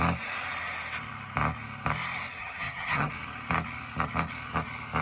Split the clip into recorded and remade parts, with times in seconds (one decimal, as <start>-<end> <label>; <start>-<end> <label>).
0.0-2.4 recorded; 2.4-3.1 remade; 3.1-5.0 recorded